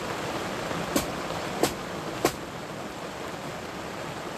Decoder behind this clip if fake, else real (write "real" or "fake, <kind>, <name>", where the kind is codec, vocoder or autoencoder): real